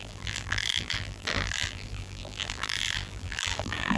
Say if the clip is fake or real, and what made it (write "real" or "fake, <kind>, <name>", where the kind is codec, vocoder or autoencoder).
fake, vocoder, BigVGAN v2